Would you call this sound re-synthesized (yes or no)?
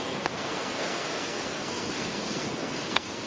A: yes